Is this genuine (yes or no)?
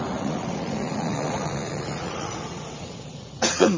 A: no